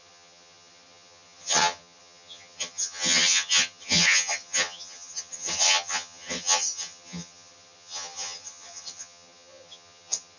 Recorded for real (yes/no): no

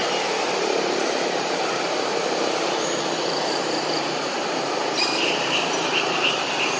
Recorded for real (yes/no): no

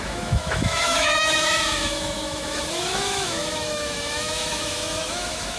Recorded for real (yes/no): no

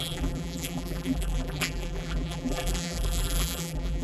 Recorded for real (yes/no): no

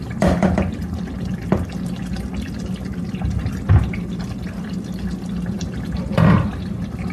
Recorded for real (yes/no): yes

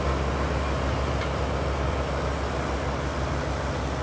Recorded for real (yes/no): yes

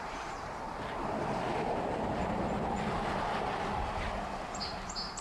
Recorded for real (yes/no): no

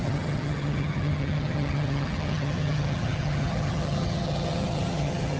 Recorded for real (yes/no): no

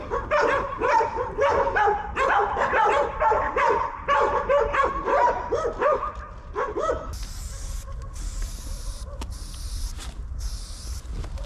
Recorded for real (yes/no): yes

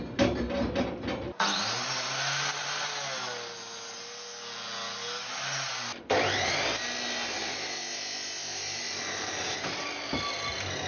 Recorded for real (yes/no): yes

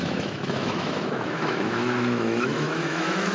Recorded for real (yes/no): no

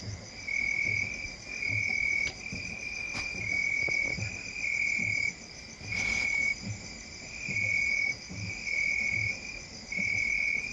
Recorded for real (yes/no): yes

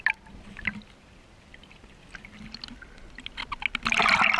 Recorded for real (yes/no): yes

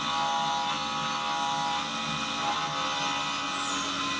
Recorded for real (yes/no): yes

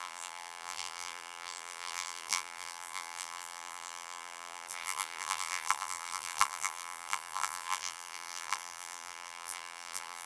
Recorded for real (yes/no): no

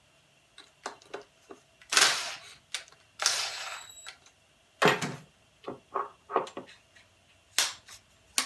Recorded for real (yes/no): yes